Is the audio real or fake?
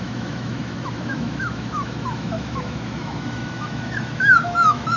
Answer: fake